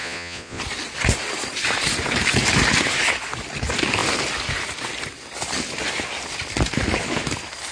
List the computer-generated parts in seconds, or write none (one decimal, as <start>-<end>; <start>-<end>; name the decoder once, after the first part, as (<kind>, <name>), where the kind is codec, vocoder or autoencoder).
0.0-0.6 (vocoder, Vocos)